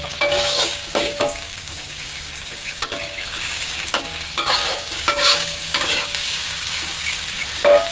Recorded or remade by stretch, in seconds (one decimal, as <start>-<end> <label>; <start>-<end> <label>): 0.0-7.9 remade